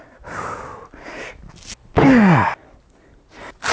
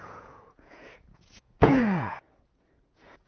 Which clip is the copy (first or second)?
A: second